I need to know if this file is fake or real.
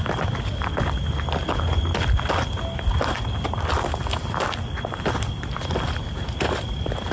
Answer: real